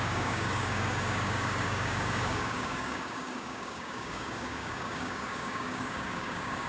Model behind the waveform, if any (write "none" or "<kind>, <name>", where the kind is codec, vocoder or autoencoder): codec, DAC